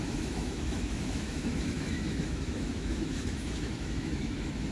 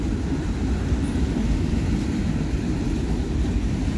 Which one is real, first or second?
second